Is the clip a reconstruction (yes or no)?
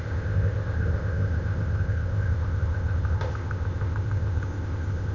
yes